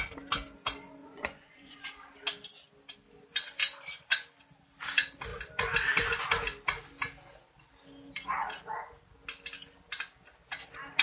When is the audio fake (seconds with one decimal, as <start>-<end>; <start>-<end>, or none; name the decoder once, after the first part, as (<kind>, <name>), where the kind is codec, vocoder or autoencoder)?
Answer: 1.0-1.9 (vocoder, Vocos)